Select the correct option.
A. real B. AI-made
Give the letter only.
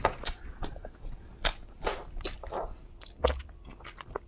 A